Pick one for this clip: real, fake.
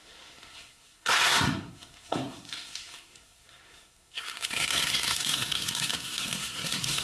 fake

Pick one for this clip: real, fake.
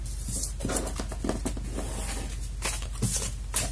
real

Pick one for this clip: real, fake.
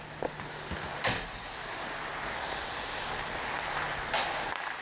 real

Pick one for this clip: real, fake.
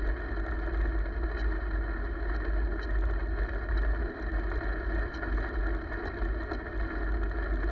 real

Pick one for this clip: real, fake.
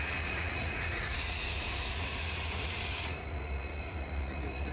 fake